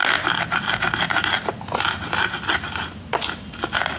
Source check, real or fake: real